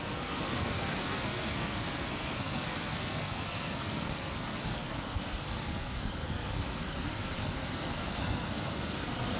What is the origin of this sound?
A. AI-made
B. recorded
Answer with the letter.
A